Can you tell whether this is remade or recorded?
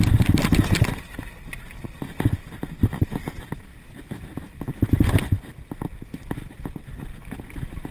recorded